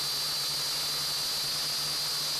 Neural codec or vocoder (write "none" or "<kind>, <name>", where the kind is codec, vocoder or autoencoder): none